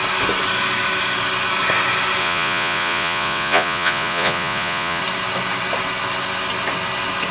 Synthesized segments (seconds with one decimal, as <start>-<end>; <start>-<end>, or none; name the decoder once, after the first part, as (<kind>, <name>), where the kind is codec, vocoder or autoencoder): 2.2-5.0 (vocoder, Vocos)